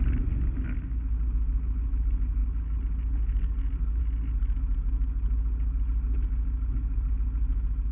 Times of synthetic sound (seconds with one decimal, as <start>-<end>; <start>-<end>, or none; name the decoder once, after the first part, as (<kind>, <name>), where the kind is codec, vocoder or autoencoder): none